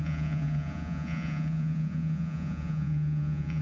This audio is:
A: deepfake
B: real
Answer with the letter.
A